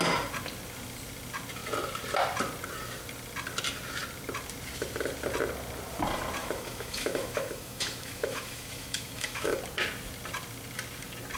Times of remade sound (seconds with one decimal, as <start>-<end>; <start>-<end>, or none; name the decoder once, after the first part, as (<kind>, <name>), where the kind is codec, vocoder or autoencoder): 6.4-9.6 (autoencoder, DAC-VAE)